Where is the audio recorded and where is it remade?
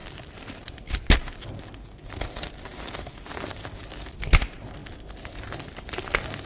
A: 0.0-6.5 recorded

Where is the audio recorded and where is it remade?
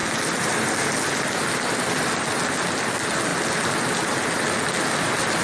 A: 0.0-5.4 recorded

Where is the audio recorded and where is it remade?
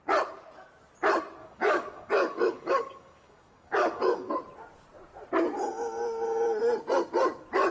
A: 0.0-1.4 recorded; 1.4-4.3 remade; 4.3-7.7 recorded